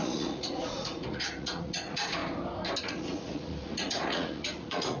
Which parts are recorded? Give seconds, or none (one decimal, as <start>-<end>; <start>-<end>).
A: 2.2-2.8